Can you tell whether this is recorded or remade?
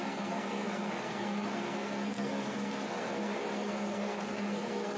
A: remade